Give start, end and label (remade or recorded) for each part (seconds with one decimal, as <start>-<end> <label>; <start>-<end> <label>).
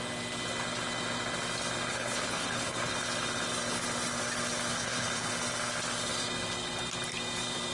0.0-1.9 recorded; 1.9-2.9 remade; 2.9-4.7 recorded; 4.7-5.3 remade; 5.3-7.7 recorded